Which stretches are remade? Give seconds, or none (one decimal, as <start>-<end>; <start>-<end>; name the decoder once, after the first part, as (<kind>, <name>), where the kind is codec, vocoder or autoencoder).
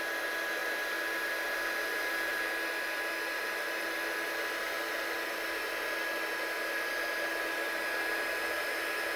none